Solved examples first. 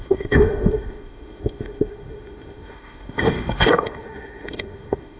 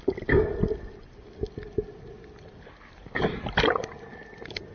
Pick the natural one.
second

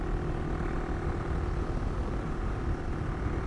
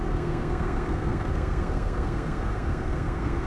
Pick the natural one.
first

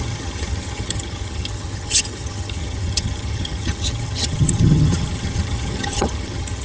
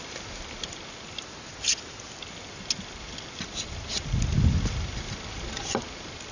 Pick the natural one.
second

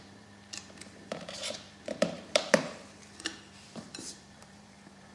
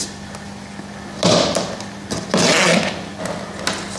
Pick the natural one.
second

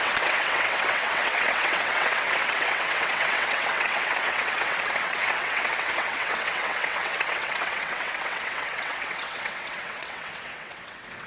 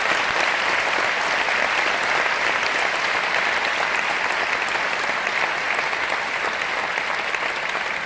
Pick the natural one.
second